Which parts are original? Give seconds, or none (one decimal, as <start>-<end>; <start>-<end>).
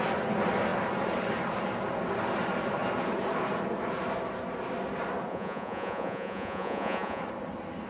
0.0-5.3; 7.2-7.9